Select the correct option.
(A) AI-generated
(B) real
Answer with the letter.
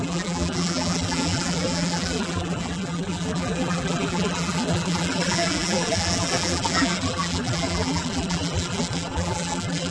A